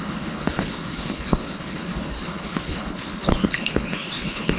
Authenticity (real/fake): fake